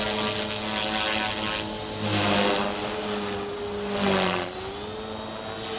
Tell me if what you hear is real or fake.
real